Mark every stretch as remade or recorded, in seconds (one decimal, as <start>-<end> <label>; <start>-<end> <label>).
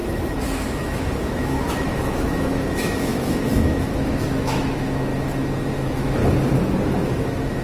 0.0-0.7 recorded; 0.7-5.1 remade; 5.1-5.7 recorded; 5.7-6.2 remade; 6.2-7.0 recorded; 7.0-7.6 remade